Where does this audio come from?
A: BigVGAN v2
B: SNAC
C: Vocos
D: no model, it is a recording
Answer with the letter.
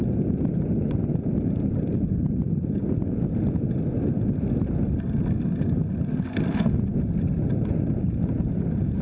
D